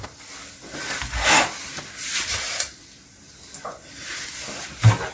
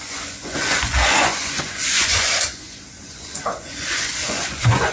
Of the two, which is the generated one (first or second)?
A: second